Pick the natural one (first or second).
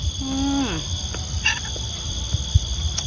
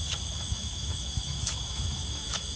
first